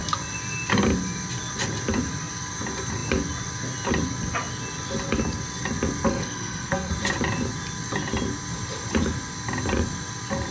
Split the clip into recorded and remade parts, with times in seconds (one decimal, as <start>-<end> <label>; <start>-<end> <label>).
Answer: 0.0-6.1 recorded; 6.1-6.9 remade; 6.9-10.5 recorded